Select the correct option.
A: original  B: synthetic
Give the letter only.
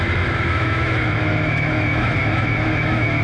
B